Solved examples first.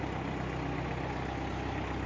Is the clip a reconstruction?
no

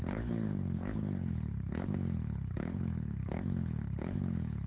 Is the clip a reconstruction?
yes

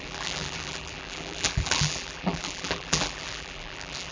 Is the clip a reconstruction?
yes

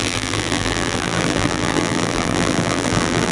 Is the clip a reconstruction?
yes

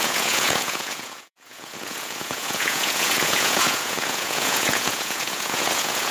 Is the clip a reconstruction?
yes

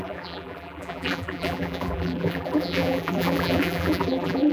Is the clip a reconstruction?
yes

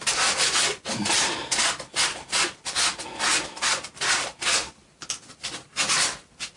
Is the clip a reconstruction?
no